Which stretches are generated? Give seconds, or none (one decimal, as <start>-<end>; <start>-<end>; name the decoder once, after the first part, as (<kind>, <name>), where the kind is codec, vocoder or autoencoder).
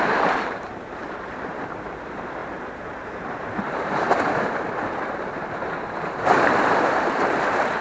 0.0-1.0 (vocoder, BigVGAN v2); 1.7-7.8